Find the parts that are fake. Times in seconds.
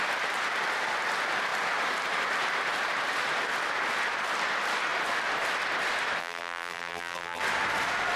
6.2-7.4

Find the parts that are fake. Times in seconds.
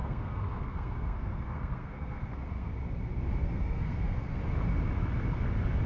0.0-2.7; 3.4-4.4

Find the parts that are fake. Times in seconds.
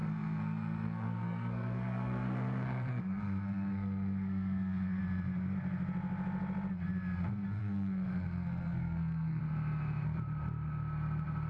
0.0-5.0; 7.6-9.4